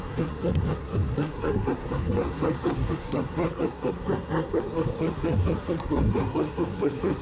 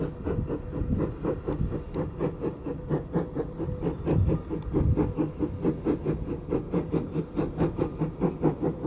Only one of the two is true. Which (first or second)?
second